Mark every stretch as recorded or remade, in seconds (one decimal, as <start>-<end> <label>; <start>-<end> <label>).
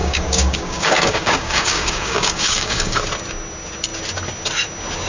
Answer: 0.0-3.0 remade; 3.0-5.1 recorded